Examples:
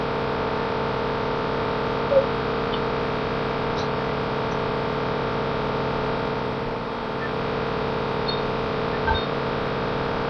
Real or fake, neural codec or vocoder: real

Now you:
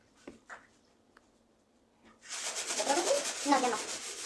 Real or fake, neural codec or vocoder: real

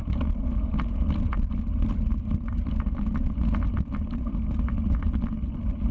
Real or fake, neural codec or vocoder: real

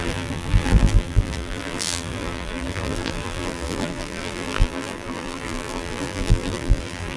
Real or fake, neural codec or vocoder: fake, vocoder, BigVGAN v2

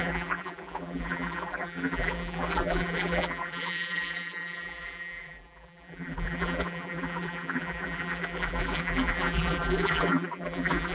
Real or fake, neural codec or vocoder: fake, vocoder, BigVGAN v2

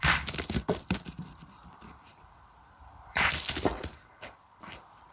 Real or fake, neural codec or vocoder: fake, vocoder, BigVGAN v2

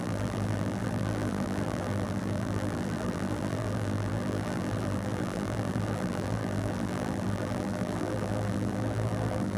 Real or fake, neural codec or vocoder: fake, vocoder, BigVGAN v2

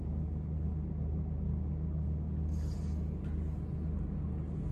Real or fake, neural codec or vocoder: real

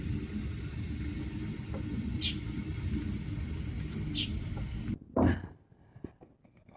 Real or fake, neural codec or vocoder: real